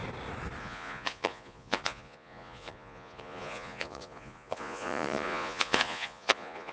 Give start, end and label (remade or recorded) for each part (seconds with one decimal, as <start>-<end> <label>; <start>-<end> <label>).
0.0-0.6 recorded; 0.6-6.7 remade

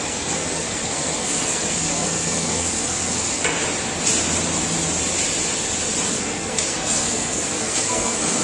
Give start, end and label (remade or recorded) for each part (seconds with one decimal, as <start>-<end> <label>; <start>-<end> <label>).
0.0-3.6 remade; 3.6-6.1 recorded; 6.1-8.4 remade

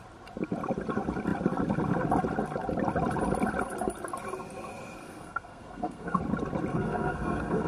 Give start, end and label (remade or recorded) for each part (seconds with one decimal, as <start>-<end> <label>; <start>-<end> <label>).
0.0-5.0 recorded; 5.0-6.2 remade; 6.2-6.7 recorded; 6.7-7.7 remade

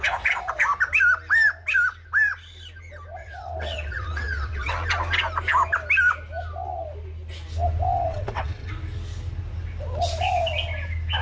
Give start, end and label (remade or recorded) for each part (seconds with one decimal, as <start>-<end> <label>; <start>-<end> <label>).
0.0-3.2 recorded; 3.2-4.7 remade; 4.7-7.9 recorded; 7.9-8.7 remade; 8.7-11.2 recorded

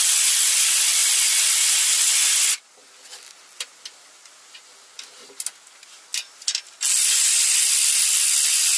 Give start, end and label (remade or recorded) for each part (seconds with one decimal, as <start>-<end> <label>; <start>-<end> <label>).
0.0-8.8 recorded

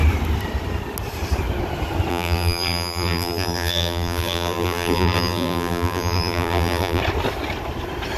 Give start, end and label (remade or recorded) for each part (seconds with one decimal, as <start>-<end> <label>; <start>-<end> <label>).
0.0-2.1 recorded; 2.1-7.0 remade; 7.0-8.2 recorded

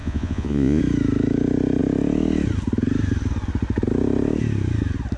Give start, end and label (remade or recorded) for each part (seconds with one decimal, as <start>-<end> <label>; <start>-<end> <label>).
0.0-0.8 remade; 0.8-5.2 recorded

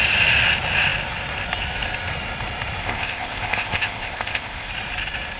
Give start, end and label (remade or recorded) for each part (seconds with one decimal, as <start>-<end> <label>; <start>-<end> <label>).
0.0-2.8 recorded; 2.8-4.7 remade; 4.7-5.4 recorded